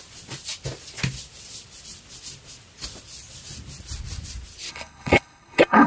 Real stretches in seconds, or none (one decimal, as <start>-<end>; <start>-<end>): 0.0-4.7